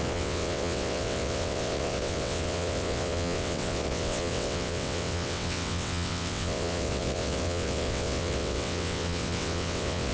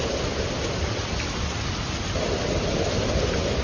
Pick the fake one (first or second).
first